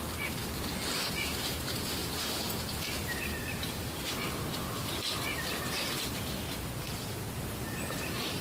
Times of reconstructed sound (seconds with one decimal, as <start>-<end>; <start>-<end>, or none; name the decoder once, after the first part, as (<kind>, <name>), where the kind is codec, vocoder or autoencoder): 2.0-4.2 (vocoder, BigVGAN v2); 4.8-5.4